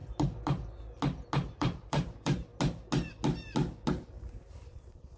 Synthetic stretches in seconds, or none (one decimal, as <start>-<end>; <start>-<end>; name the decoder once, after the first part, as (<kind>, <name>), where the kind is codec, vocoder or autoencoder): 1.6-2.5 (vocoder, BigVGAN v2); 3.9-5.2